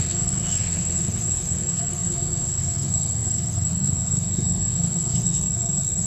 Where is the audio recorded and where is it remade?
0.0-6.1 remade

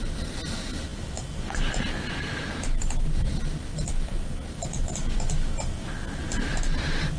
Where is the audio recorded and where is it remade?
0.0-7.2 recorded

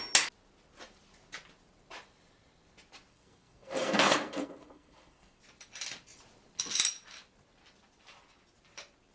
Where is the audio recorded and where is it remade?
0.0-3.1 recorded; 3.1-5.4 remade; 5.4-9.1 recorded